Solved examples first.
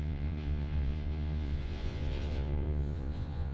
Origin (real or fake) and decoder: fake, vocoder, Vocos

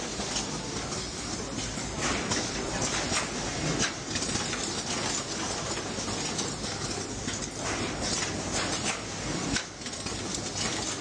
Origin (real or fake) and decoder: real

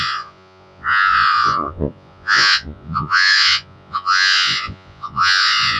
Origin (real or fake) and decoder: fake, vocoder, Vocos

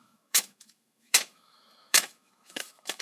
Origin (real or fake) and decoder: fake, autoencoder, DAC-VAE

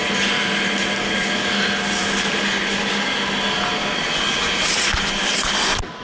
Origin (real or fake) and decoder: real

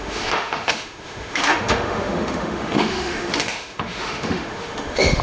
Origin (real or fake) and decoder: fake, autoencoder, DAC-VAE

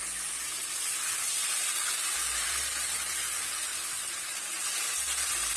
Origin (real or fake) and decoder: real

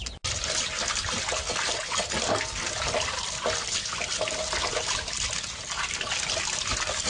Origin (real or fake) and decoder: real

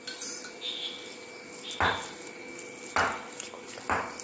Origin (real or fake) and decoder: real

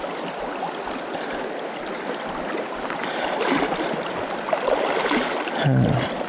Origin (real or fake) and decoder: real